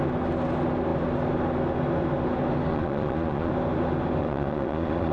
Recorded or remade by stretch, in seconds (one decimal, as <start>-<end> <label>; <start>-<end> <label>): 0.0-2.7 recorded; 2.7-3.5 remade; 3.5-4.2 recorded; 4.2-5.1 remade